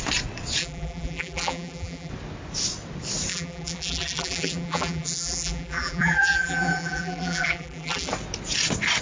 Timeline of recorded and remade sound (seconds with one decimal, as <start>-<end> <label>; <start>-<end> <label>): 0.0-0.6 recorded; 0.6-2.1 remade; 2.1-3.3 recorded; 3.3-8.1 remade; 8.1-9.0 recorded